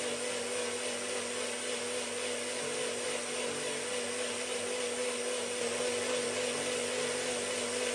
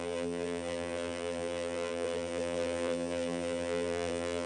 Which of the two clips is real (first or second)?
first